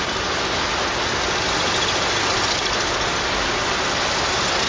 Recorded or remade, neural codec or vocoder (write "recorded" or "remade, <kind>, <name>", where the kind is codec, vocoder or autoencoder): recorded